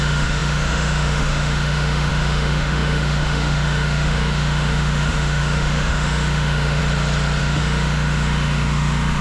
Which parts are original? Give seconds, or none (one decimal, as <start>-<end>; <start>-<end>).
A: 6.8-7.4